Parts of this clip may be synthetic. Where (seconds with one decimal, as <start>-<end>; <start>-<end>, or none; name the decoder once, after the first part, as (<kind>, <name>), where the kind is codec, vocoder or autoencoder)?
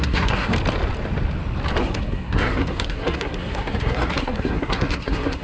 0.0-0.5 (codec, SNAC); 1.8-5.4